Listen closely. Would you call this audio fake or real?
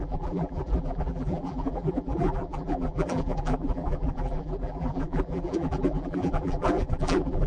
fake